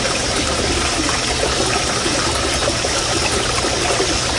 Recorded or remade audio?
recorded